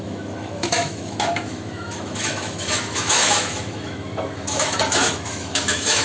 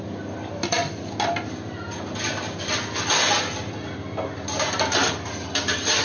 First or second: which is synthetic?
first